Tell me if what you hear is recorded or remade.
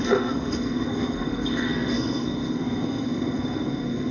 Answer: remade